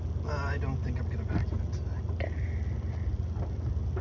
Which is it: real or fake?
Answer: real